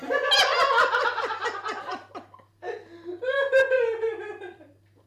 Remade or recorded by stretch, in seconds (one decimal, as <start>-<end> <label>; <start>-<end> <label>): 0.0-1.9 recorded; 1.9-5.1 remade